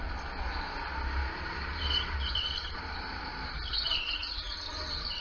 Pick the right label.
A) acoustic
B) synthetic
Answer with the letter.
A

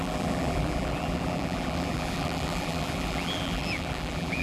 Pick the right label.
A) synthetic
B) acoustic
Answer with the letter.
A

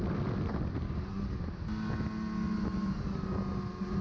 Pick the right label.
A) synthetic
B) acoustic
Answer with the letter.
B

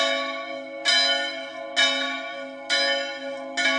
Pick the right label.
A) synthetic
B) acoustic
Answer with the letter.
B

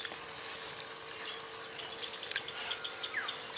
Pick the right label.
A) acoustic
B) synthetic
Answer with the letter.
A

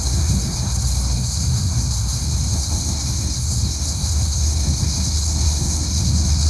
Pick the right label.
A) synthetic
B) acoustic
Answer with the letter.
A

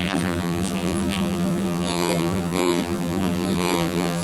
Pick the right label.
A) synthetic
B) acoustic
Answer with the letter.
A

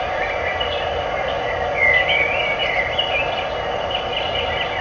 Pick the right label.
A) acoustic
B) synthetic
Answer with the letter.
A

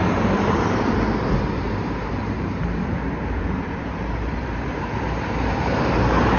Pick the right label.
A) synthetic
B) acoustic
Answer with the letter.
A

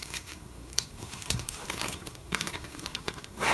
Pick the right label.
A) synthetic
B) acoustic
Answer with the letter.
A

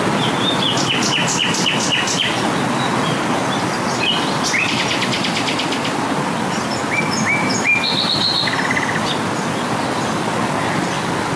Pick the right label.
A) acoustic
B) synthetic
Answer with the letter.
A